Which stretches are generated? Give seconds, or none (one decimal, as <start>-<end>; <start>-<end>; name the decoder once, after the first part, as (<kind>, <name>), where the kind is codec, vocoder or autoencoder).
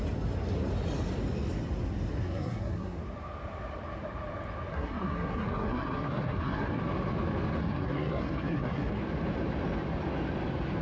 2.2-3.0 (codec, SNAC); 4.7-6.8; 7.6-9.0